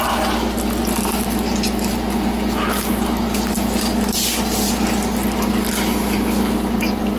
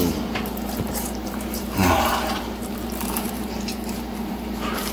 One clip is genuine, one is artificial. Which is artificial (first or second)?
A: second